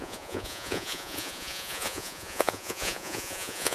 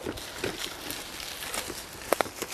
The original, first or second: second